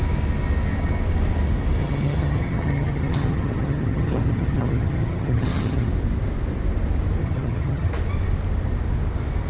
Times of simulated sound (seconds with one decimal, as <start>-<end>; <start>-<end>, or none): 1.8-5.9; 7.2-7.9